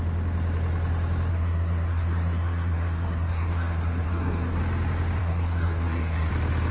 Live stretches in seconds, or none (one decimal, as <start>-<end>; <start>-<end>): 0.0-1.3; 4.6-5.2; 6.3-6.7